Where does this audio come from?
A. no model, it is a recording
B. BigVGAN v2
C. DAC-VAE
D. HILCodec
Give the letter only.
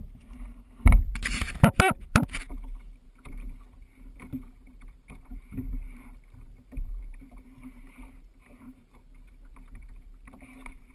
B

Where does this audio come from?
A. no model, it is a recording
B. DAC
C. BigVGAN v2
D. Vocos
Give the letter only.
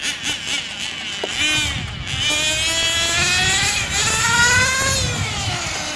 A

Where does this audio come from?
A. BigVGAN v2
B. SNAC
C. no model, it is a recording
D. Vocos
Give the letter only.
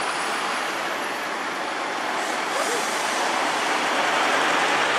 A